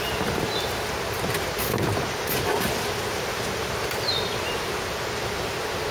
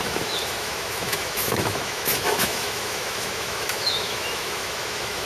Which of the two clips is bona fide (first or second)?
first